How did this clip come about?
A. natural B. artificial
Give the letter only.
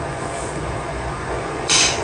B